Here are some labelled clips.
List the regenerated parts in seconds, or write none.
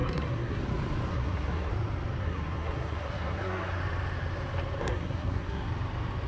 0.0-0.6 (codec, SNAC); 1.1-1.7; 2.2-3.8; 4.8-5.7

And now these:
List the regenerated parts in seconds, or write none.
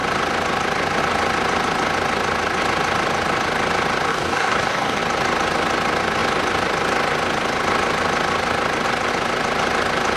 4.1-5.0 (codec, DAC)